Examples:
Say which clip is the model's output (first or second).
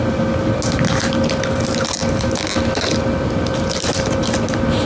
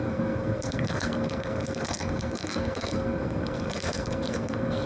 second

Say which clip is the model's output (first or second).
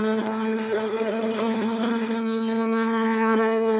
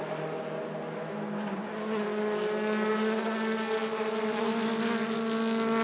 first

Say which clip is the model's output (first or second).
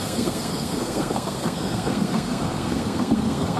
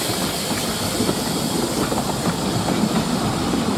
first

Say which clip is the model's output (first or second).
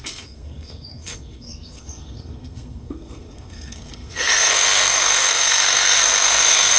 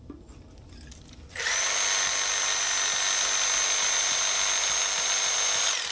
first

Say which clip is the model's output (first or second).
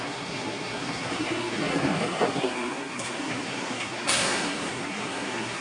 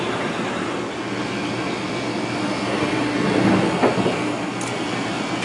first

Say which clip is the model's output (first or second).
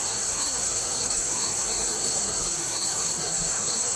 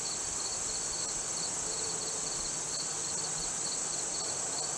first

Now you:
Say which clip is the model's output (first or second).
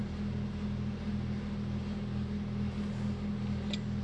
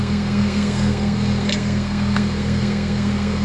second